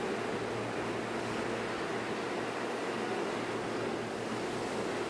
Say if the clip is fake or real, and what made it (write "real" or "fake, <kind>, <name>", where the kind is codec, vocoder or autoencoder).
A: real